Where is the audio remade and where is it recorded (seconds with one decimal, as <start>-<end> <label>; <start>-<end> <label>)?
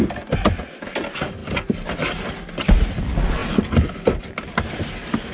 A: 0.0-5.3 recorded